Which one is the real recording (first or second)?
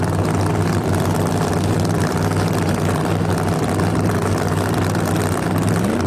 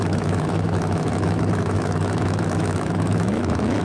first